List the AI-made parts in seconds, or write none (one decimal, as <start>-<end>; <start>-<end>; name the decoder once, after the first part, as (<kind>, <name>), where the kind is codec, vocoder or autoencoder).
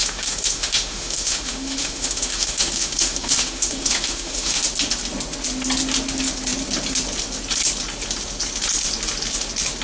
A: 0.0-4.6 (autoencoder, DAC-VAE)